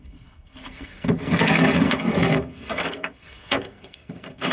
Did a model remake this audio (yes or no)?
yes